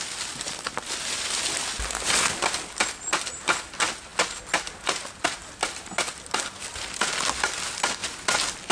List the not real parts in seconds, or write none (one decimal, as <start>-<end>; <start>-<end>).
none

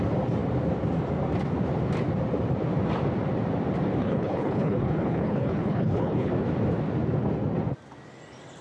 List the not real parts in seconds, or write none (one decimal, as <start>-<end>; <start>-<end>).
4.0-6.3

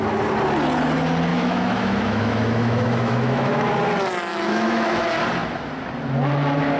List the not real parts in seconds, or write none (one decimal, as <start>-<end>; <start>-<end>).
1.3-3.7; 4.3-5.0

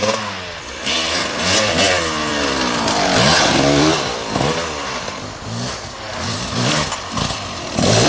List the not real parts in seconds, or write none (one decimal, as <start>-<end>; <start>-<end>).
none